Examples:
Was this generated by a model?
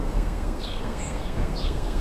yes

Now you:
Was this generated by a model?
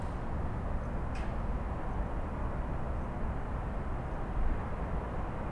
no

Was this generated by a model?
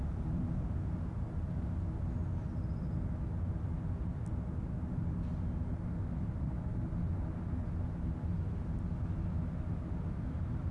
no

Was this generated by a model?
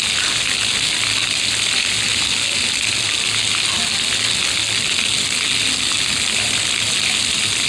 no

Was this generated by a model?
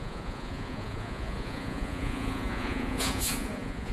yes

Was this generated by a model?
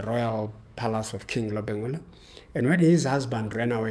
yes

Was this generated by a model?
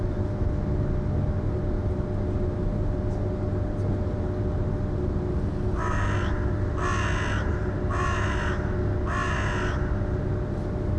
no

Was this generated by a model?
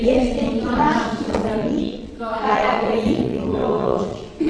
yes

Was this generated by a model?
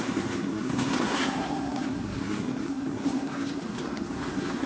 yes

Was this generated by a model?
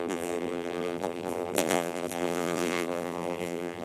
yes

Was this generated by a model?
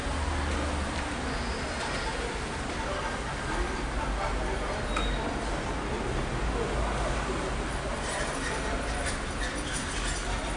no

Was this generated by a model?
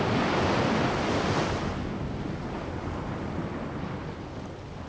no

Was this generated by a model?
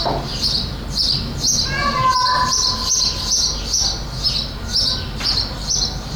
no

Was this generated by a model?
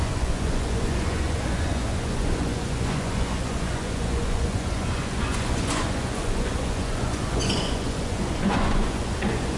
yes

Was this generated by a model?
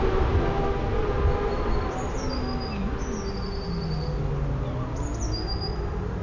no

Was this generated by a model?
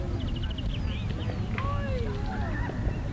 no